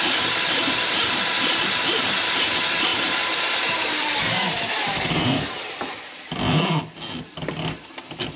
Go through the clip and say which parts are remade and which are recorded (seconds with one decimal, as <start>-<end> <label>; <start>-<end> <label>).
0.0-1.4 recorded; 1.4-2.0 remade; 2.0-2.9 recorded; 2.9-5.8 remade; 5.8-8.4 recorded